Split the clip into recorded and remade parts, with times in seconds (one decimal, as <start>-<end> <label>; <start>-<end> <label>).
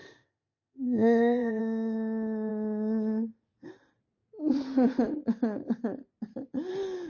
0.0-1.6 remade; 1.6-7.1 recorded